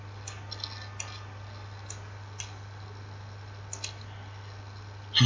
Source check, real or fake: real